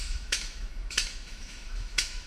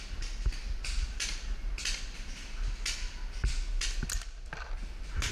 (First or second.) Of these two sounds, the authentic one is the second